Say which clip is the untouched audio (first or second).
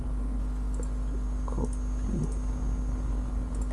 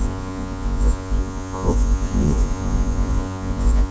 first